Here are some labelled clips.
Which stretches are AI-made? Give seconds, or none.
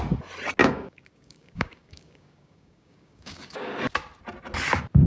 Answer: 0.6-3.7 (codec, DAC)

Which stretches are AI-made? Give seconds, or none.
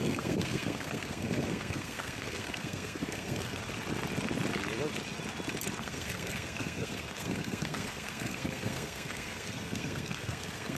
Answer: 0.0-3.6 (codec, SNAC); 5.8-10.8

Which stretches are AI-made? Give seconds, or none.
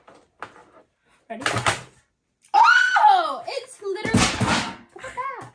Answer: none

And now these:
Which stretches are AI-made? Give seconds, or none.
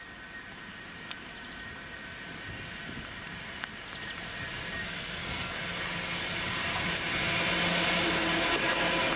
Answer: 4.8-5.6 (codec, SNAC)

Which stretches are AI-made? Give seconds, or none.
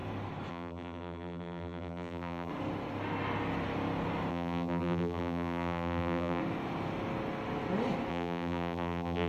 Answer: 0.5-2.5 (vocoder, BigVGAN v2); 4.3-6.4; 8.1-9.3